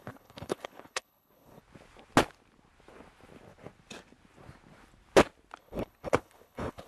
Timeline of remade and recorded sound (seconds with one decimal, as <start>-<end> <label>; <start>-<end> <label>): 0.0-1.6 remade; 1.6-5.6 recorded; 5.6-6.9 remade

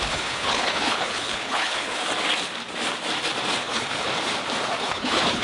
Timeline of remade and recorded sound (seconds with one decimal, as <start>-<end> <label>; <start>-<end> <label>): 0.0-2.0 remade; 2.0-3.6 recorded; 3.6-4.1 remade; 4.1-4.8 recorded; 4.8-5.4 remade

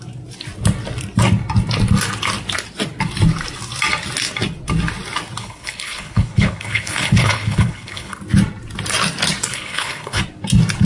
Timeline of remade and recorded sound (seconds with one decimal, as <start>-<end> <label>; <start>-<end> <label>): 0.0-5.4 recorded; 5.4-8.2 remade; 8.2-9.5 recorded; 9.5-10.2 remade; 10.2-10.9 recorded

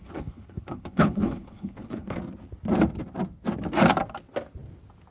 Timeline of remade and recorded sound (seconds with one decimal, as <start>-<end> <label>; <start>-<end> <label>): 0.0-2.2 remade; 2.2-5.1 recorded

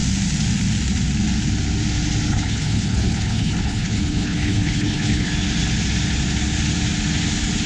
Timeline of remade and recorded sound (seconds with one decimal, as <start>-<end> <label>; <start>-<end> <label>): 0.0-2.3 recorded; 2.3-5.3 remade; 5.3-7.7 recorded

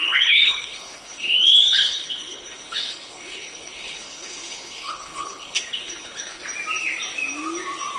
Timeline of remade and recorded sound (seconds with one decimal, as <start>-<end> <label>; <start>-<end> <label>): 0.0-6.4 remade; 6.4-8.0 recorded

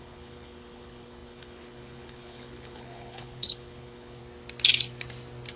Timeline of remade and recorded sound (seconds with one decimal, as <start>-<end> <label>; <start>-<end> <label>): 0.0-4.2 remade; 4.2-5.6 recorded